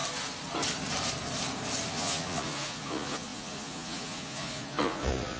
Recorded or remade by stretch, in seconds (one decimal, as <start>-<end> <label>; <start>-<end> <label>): 0.0-1.9 recorded; 1.9-5.4 remade